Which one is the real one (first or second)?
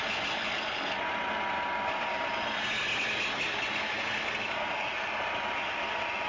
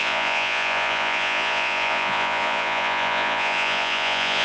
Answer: first